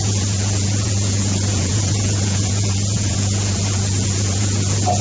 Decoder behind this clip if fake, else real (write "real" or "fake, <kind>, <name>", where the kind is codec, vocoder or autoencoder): fake, vocoder, Vocos